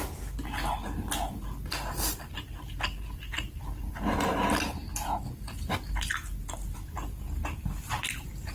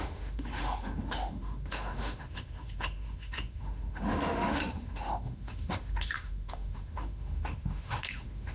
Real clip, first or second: first